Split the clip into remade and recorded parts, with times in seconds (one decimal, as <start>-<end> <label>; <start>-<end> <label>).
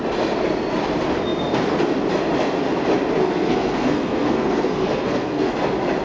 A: 0.0-3.2 recorded; 3.2-5.5 remade; 5.5-6.0 recorded